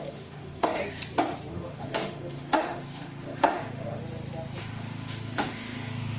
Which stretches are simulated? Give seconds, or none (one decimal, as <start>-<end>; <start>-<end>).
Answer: 0.0-0.8; 1.5-4.0; 4.6-6.2

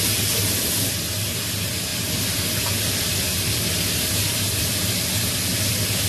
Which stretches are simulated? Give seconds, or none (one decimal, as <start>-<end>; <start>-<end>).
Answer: none

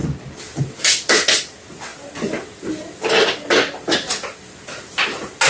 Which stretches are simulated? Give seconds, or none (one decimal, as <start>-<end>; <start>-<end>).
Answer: none

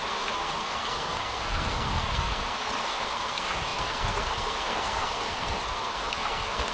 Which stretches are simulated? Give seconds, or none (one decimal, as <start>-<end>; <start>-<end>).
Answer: 0.0-6.7

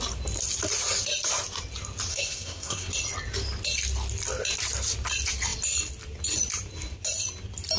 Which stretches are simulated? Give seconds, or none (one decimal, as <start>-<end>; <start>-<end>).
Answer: 2.1-2.9

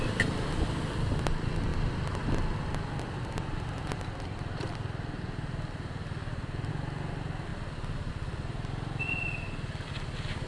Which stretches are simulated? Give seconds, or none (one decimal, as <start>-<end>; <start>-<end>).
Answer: none

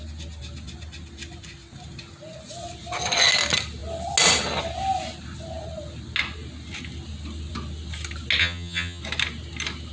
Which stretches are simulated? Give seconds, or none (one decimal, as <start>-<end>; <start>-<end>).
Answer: 8.4-9.0